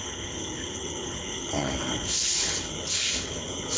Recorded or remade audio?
remade